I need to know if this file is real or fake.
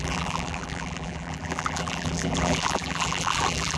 fake